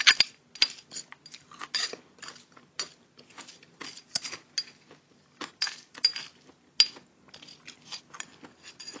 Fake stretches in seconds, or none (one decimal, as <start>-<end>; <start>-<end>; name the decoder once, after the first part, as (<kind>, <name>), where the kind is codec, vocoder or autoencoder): none